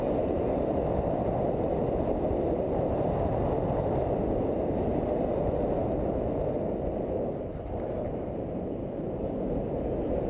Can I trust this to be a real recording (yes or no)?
yes